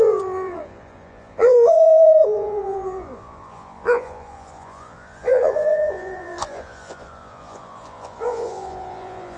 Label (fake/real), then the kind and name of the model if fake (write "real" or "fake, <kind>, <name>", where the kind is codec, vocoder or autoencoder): fake, vocoder, Vocos